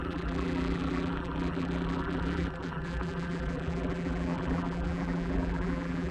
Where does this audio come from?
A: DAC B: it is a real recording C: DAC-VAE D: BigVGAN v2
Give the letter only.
D